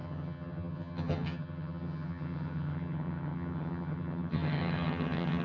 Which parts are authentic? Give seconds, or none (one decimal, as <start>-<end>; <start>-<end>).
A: none

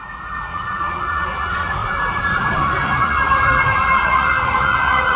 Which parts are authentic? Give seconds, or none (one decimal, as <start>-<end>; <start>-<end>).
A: none

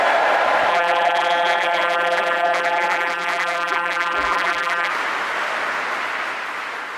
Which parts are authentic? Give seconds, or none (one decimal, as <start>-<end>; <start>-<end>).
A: 0.0-0.7; 4.9-7.0

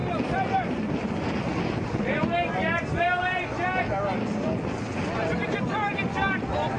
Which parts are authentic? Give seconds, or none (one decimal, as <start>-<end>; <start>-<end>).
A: 0.0-6.8